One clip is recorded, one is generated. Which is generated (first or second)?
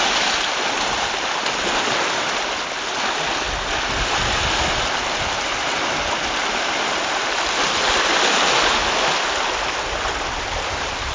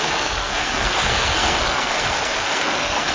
second